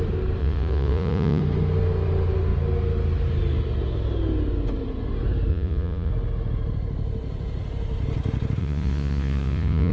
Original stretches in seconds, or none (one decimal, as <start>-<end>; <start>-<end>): 0.0-0.4; 1.4-5.5; 6.1-8.6